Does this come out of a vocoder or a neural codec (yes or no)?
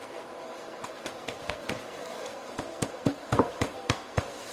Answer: yes